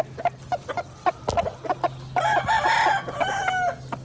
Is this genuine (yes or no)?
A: yes